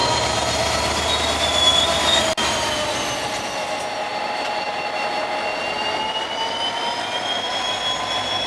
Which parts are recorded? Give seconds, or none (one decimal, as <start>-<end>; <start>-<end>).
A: 1.2-4.1; 4.8-8.5